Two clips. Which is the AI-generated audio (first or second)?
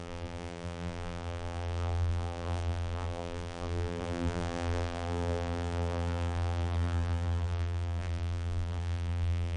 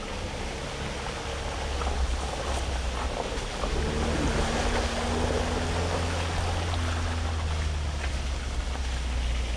first